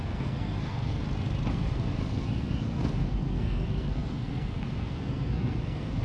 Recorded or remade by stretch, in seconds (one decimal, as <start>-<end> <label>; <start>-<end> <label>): 0.0-1.0 remade; 1.0-1.5 recorded; 1.5-6.0 remade